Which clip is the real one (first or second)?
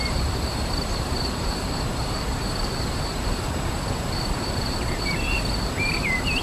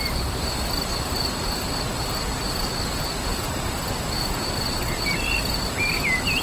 second